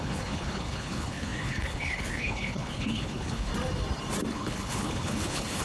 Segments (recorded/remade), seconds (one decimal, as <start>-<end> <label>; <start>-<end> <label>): 0.0-3.5 remade; 3.5-4.3 recorded; 4.3-5.6 remade